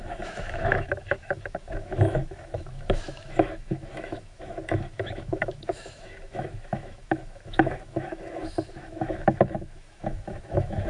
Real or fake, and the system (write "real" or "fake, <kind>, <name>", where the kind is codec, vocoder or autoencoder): fake, autoencoder, DAC-VAE